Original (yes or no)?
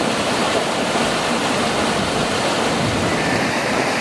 yes